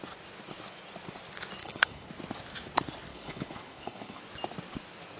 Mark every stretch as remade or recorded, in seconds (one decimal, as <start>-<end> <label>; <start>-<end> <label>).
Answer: 0.0-1.6 recorded; 1.6-2.1 remade; 2.1-3.1 recorded; 3.1-4.2 remade; 4.2-5.2 recorded